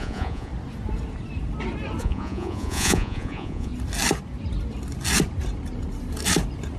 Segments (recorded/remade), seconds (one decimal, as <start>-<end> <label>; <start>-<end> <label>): 0.0-0.5 remade; 0.5-2.0 recorded; 2.0-3.7 remade; 3.7-6.8 recorded